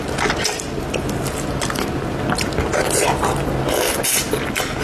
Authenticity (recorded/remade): recorded